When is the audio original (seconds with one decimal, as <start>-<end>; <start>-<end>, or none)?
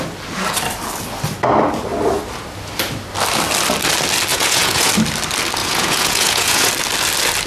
0.0-4.3; 4.9-5.6; 6.7-7.5